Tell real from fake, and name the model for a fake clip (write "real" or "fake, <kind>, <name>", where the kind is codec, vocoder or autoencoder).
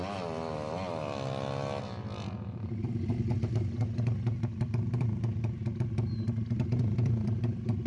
real